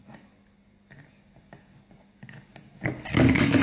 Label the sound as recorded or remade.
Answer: recorded